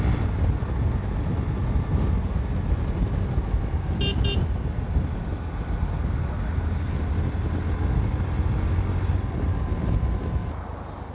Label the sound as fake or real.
real